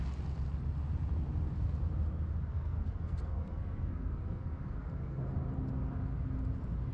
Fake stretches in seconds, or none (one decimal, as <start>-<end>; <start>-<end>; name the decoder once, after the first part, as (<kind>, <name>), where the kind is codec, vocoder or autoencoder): 2.5-5.2 (codec, SNAC)